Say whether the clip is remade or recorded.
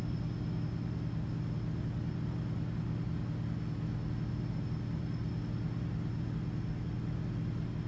recorded